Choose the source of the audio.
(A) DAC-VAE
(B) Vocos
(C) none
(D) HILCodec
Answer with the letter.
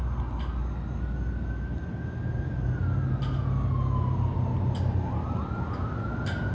C